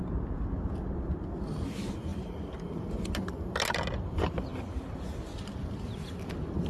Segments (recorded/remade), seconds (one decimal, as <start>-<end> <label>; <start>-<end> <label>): 0.0-2.1 recorded; 2.1-3.0 remade; 3.0-6.7 recorded